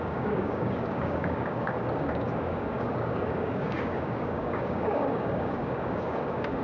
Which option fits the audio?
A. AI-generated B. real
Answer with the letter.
A